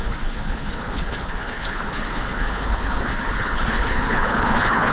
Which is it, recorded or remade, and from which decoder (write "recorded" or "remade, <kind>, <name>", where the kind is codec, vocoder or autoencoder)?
remade, codec, HILCodec